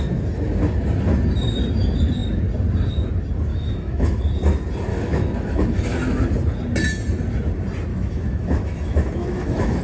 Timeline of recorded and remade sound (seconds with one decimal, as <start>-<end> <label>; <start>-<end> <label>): 0.0-3.5 recorded; 3.5-4.2 remade; 4.2-4.9 recorded; 4.9-6.2 remade; 6.2-7.9 recorded; 7.9-9.8 remade